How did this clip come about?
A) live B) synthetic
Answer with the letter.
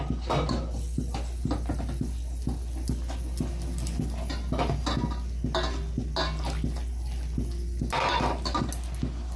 A